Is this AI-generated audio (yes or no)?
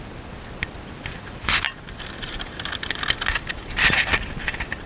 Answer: no